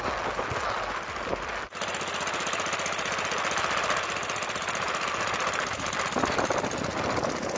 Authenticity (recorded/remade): recorded